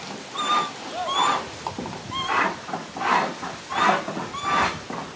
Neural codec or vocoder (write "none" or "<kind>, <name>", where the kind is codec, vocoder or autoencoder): none